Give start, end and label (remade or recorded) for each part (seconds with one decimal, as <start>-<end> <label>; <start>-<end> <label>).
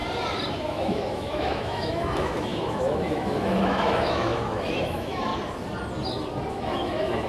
0.0-0.5 recorded; 0.5-5.3 remade; 5.3-6.5 recorded; 6.5-7.3 remade